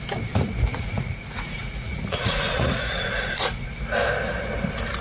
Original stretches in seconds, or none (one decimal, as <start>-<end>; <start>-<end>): 0.0-0.7; 3.7-5.0